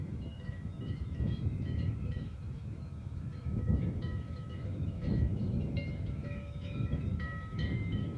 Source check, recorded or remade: remade